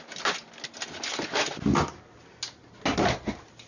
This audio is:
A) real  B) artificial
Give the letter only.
A